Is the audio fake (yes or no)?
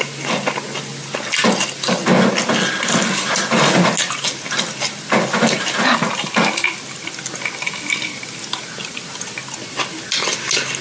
no